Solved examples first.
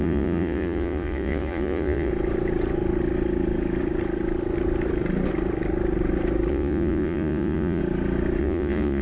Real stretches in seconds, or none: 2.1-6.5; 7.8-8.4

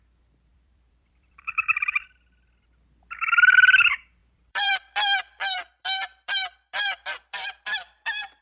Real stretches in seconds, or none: 0.0-0.5; 1.9-4.2

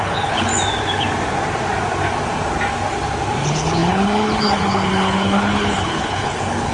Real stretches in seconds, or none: 0.5-3.4

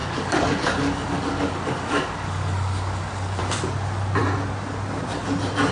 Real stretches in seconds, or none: 3.4-5.7

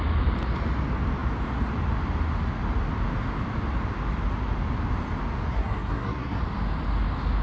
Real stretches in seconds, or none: 0.0-5.5; 6.4-7.4